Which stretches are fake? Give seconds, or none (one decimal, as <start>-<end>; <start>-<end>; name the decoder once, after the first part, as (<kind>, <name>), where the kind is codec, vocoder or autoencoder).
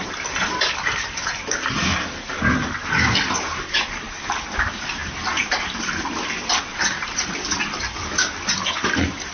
none